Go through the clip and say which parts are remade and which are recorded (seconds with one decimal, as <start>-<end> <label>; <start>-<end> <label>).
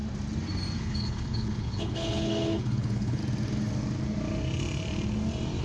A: 0.0-0.8 recorded; 0.8-3.2 remade; 3.2-5.6 recorded